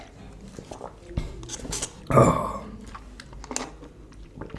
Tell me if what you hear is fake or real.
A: real